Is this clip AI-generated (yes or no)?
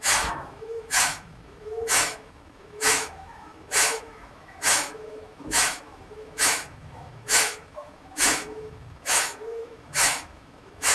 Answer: yes